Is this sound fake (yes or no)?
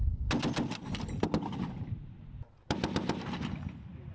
no